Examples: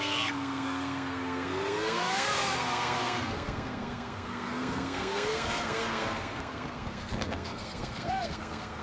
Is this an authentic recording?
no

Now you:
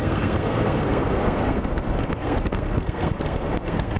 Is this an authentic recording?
no